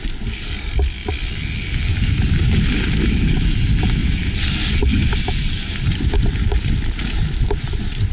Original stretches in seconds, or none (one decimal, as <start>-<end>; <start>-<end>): 2.4-3.2; 4.0-5.2